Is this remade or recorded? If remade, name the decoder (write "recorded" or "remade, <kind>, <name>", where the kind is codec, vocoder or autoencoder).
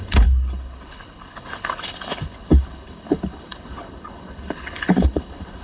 remade, codec, HILCodec